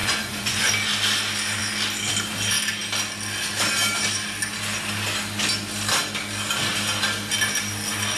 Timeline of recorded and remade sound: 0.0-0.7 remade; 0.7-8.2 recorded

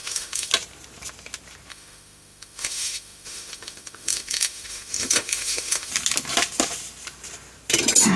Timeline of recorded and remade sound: 0.0-0.5 remade; 0.5-1.7 recorded; 1.7-5.9 remade; 5.9-8.2 recorded

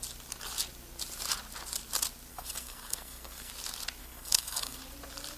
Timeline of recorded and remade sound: 0.0-2.3 recorded; 2.3-3.5 remade; 3.5-4.0 recorded; 4.0-4.8 remade; 4.8-5.4 recorded

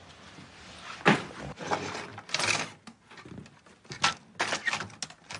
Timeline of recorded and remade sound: 0.0-5.4 recorded

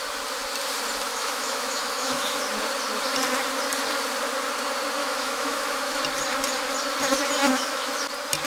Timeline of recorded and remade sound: 0.0-1.1 recorded; 1.1-2.4 remade; 2.4-5.0 recorded; 5.0-6.0 remade; 6.0-7.4 recorded; 7.4-8.0 remade; 8.0-8.5 recorded

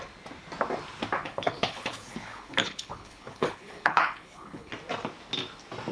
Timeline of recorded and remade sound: 0.0-1.2 recorded; 1.2-4.7 remade; 4.7-5.9 recorded

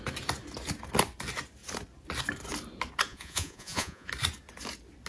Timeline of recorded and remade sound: 0.0-3.1 recorded; 3.1-4.1 remade; 4.1-5.1 recorded